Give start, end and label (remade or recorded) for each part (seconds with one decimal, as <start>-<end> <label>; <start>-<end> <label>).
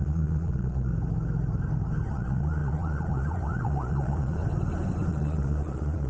0.0-0.9 remade; 0.9-2.1 recorded; 2.1-4.4 remade; 4.4-5.1 recorded; 5.1-6.1 remade